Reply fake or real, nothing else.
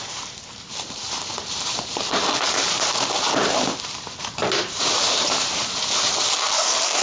fake